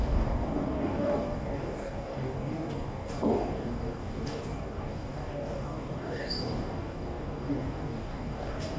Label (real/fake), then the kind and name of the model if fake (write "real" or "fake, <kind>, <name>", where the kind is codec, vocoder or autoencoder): fake, codec, DAC